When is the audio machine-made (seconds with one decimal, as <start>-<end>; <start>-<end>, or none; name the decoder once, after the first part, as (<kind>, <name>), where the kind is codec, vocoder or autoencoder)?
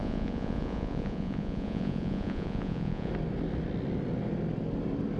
0.0-3.1 (vocoder, Vocos)